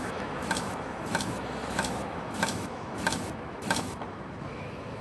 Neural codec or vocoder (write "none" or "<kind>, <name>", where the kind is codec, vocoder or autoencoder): autoencoder, DAC-VAE